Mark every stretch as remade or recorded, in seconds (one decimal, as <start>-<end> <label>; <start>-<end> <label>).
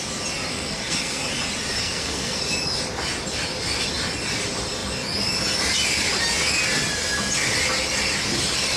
0.0-0.5 recorded; 0.5-1.3 remade; 1.3-1.8 recorded; 1.8-2.4 remade; 2.4-8.8 recorded